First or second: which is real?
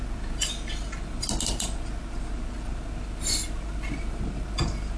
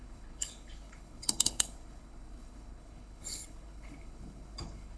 first